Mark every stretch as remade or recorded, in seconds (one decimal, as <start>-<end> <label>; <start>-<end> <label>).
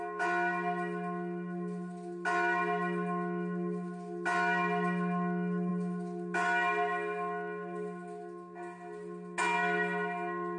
0.0-10.6 recorded